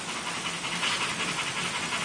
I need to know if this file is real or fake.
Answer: real